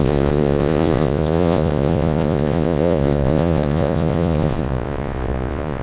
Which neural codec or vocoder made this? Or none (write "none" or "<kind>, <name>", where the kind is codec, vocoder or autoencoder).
vocoder, Vocos